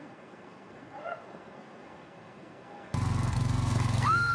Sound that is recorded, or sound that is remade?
remade